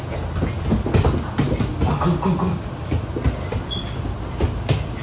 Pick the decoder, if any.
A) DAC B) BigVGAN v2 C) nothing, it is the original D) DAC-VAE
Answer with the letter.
C